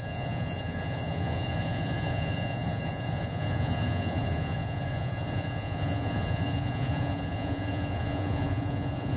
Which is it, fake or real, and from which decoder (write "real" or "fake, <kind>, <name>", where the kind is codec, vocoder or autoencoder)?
fake, vocoder, Vocos